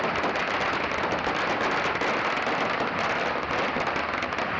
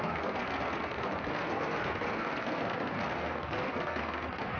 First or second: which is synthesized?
second